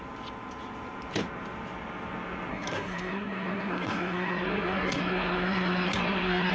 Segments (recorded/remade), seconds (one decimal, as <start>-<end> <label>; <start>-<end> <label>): 0.0-2.5 recorded; 2.5-6.5 remade